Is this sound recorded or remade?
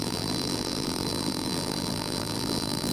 remade